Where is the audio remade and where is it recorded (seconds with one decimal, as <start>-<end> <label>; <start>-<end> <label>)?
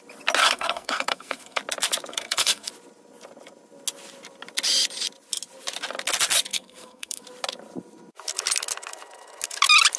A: 0.0-0.4 recorded; 0.4-1.6 remade; 1.6-2.1 recorded; 2.1-2.7 remade; 2.7-6.5 recorded; 6.5-7.2 remade; 7.2-10.0 recorded